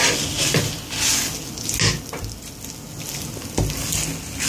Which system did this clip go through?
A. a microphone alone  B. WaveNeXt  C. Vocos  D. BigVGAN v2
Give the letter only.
A